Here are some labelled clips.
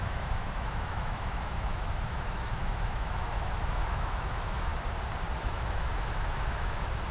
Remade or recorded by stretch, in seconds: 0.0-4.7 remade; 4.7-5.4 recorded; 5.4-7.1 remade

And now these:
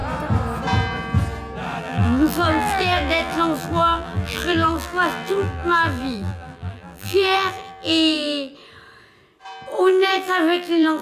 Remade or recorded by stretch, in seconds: 0.0-1.8 recorded; 1.8-8.5 remade; 8.5-9.8 recorded; 9.8-11.0 remade

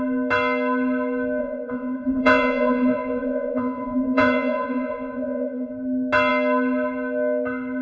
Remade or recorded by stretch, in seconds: 0.0-1.4 recorded; 1.4-5.7 remade; 5.7-7.8 recorded